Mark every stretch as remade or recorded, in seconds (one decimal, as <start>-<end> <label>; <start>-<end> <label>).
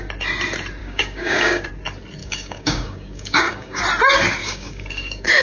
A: 0.0-0.8 recorded; 0.8-1.7 remade; 1.7-2.2 recorded; 2.2-3.8 remade; 3.8-4.4 recorded; 4.4-5.4 remade